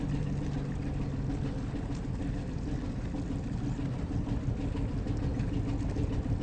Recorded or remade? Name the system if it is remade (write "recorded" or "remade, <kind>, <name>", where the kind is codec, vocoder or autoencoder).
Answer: recorded